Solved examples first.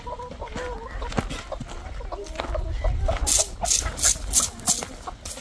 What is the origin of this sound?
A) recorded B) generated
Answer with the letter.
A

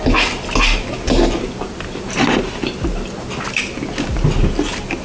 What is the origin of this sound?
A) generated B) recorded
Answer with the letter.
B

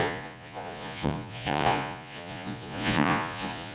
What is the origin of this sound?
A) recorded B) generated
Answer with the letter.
B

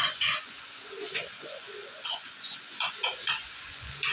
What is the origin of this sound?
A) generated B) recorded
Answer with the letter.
A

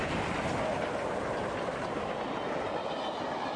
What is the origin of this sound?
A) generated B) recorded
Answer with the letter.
B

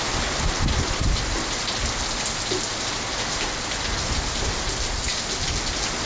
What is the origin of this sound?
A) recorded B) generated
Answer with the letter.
A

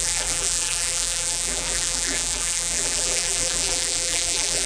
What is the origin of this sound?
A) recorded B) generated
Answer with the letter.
B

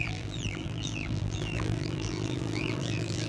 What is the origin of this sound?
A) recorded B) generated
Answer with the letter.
B